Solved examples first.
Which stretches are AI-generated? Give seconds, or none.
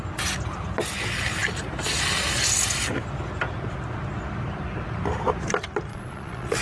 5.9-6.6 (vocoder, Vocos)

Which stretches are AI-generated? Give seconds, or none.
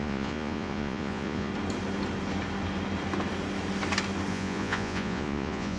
0.0-1.5 (vocoder, Vocos); 4.3-5.8